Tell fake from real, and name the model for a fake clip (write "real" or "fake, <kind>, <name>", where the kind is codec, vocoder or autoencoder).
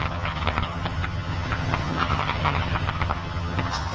fake, vocoder, HiFi-GAN